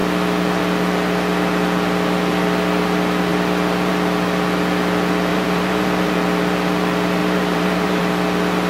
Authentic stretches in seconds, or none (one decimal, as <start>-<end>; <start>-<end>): 0.0-5.3; 6.1-7.2; 8.0-8.7